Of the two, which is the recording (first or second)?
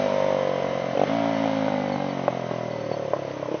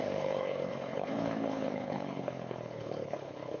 first